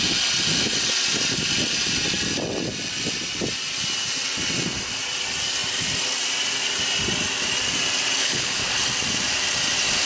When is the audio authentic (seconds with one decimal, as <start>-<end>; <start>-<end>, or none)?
0.0-8.2; 8.7-10.1